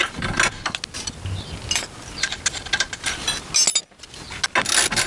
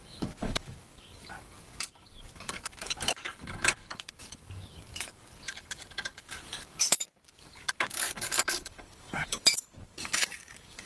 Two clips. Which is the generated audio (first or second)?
second